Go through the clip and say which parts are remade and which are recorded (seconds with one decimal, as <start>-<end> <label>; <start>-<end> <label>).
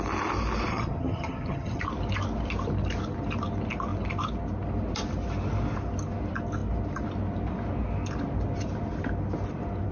0.0-0.7 recorded; 0.7-1.8 remade; 1.8-9.9 recorded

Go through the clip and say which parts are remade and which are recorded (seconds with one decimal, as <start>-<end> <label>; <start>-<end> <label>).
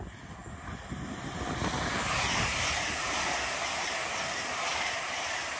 0.0-5.6 recorded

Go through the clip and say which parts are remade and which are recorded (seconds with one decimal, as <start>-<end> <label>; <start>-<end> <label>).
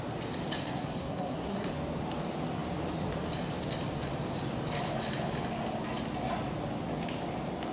0.0-0.6 recorded; 0.6-1.7 remade; 1.7-7.7 recorded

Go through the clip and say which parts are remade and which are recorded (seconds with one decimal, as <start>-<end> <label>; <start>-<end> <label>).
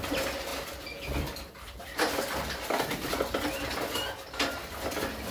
0.0-0.5 recorded; 0.5-3.1 remade; 3.1-5.3 recorded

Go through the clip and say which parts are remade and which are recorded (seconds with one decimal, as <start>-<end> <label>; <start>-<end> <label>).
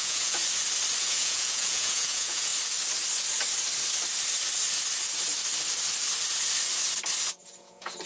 0.0-0.4 remade; 0.4-1.0 recorded; 1.0-2.5 remade; 2.5-7.3 recorded; 7.3-8.1 remade